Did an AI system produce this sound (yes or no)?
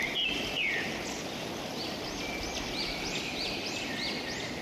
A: no